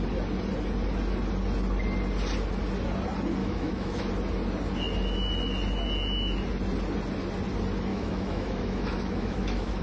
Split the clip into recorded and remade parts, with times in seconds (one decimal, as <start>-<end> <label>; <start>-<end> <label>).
0.0-3.4 recorded; 3.4-4.1 remade; 4.1-7.9 recorded; 7.9-9.8 remade